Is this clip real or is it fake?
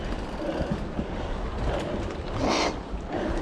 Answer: real